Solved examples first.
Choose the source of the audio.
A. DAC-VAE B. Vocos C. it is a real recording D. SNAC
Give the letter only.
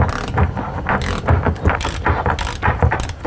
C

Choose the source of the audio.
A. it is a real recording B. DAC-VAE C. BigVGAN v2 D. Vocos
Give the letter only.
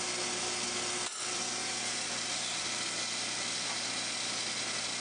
A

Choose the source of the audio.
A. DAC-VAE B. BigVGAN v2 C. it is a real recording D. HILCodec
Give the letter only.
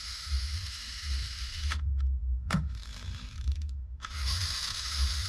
A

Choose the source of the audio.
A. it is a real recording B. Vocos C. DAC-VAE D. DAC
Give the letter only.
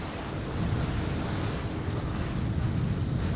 A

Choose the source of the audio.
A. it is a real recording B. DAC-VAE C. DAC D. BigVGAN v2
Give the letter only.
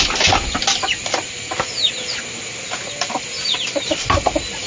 A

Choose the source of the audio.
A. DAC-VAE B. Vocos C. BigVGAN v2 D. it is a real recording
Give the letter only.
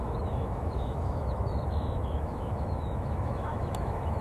A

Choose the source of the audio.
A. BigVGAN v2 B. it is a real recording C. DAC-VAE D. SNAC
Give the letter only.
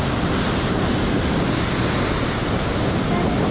B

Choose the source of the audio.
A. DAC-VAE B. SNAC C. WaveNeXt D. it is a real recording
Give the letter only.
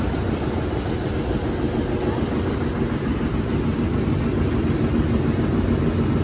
D